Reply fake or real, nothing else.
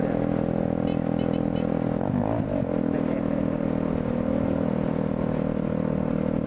real